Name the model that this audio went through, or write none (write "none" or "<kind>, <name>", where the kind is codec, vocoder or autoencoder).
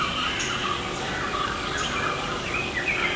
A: none